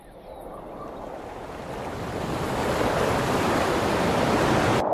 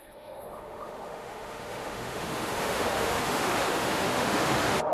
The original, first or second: first